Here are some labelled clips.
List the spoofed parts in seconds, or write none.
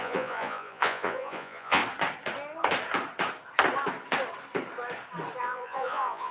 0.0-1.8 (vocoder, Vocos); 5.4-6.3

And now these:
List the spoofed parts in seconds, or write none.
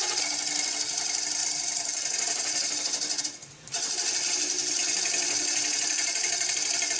none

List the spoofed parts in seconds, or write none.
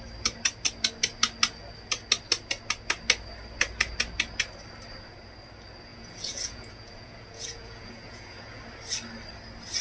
5.9-8.6 (vocoder, Vocos)